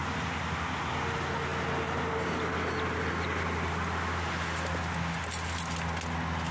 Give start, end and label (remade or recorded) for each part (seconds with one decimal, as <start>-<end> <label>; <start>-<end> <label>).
0.0-6.5 recorded

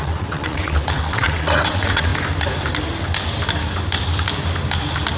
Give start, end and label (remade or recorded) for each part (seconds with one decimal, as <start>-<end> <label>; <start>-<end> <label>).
0.0-2.1 remade; 2.1-5.2 recorded

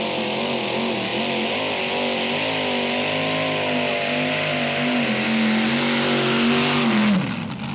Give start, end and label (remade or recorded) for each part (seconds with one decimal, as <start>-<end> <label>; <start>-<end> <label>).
0.0-7.7 recorded

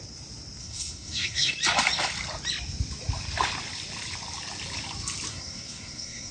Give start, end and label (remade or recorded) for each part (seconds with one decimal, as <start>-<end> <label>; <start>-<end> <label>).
0.0-0.6 recorded; 0.6-1.5 remade; 1.5-5.3 recorded; 5.3-6.3 remade